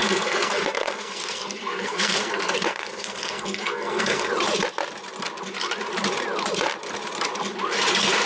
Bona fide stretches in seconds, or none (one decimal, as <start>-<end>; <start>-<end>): 4.3-8.3